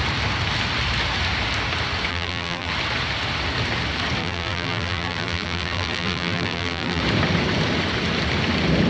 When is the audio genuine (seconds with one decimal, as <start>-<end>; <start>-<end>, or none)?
0.0-2.1; 2.7-4.2; 7.0-8.9

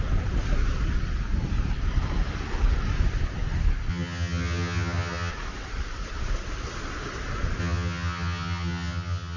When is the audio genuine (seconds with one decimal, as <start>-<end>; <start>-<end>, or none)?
0.0-3.9; 5.3-7.6

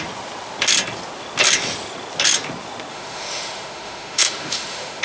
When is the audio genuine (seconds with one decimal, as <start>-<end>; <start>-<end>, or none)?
0.0-2.9

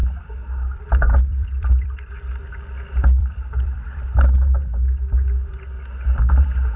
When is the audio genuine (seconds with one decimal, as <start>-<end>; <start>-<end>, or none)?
0.0-1.3; 2.1-3.2; 3.8-6.8

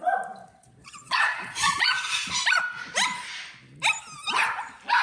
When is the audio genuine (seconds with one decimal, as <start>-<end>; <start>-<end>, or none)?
0.0-0.4; 2.3-5.0